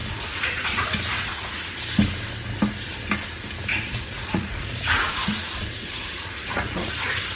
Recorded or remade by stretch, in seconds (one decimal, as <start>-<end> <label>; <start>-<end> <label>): 0.0-1.7 remade; 1.7-3.7 recorded; 3.7-7.4 remade